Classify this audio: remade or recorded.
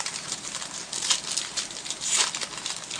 remade